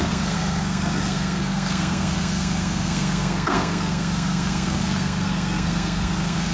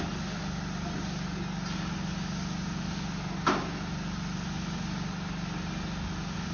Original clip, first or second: second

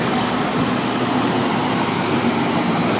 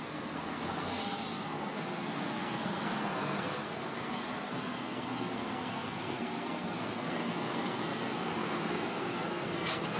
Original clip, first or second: first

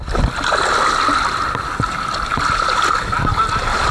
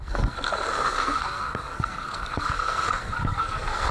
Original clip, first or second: first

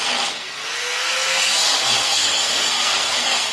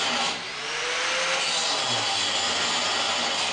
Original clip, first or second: second